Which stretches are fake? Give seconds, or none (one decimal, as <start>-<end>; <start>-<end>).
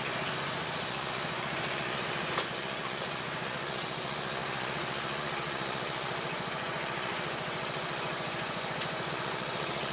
0.0-9.9